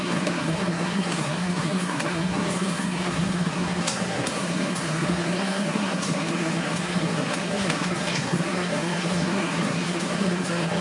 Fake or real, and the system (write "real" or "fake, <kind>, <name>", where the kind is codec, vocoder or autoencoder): fake, codec, SNAC